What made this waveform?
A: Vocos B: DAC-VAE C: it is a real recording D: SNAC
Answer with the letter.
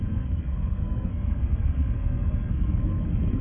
D